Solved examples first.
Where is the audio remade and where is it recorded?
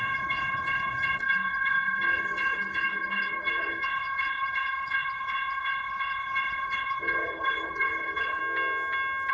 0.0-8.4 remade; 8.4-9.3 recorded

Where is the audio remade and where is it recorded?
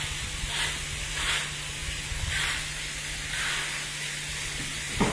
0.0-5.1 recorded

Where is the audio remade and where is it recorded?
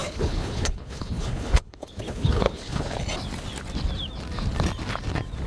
0.0-3.0 remade; 3.0-5.5 recorded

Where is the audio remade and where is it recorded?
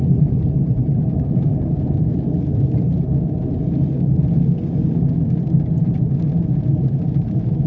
0.0-3.1 remade; 3.1-5.6 recorded; 5.6-7.7 remade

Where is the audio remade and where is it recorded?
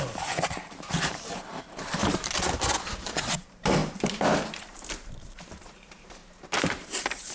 0.0-2.0 remade; 2.0-3.4 recorded; 3.4-6.2 remade; 6.2-7.3 recorded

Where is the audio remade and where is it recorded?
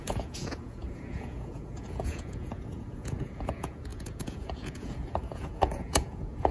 0.0-6.5 remade